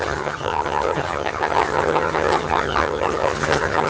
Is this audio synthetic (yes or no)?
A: yes